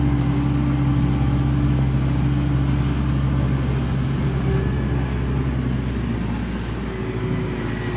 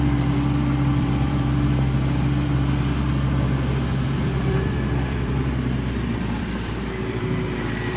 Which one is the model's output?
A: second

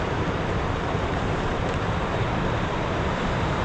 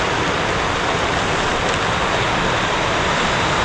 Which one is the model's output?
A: first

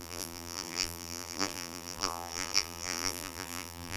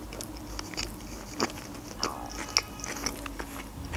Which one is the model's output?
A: first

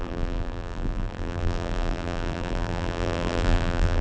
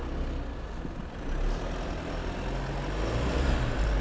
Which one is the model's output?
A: first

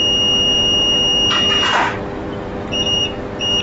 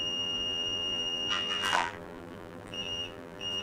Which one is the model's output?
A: second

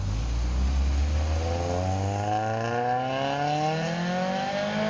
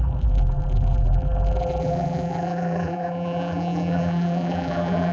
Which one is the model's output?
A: second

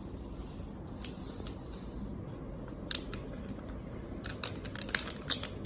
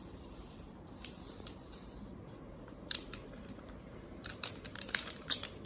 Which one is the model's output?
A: second